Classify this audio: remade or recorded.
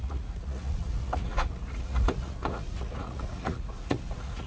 remade